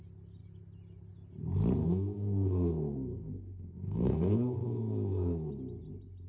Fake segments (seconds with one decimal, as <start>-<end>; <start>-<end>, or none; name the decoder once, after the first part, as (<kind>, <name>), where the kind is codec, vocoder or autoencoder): 1.8-5.5 (codec, SNAC)